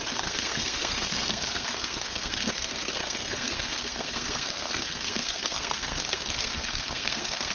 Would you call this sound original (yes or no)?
no